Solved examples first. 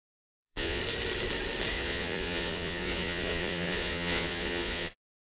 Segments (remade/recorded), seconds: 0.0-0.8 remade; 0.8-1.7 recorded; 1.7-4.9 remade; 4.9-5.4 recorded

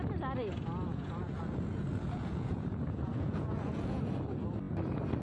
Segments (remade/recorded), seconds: 0.0-0.9 recorded; 0.9-4.0 remade; 4.0-5.2 recorded

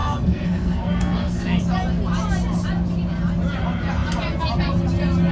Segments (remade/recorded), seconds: 0.0-1.6 remade; 1.6-5.3 recorded

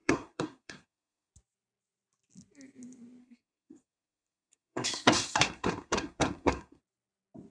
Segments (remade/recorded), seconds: 0.0-1.3 remade; 1.3-3.2 recorded; 3.2-6.8 remade; 6.8-7.5 recorded

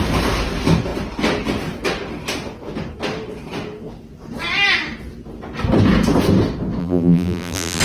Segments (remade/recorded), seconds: 0.0-6.8 recorded; 6.8-7.8 remade

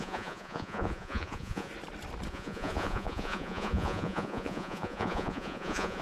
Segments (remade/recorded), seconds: 0.0-1.7 remade; 1.7-2.3 recorded; 2.3-6.0 remade

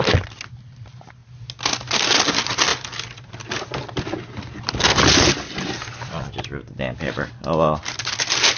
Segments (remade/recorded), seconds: 0.0-8.6 recorded

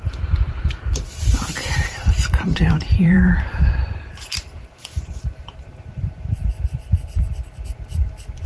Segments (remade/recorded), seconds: 0.0-8.5 remade